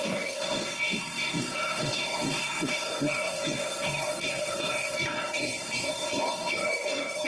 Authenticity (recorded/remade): remade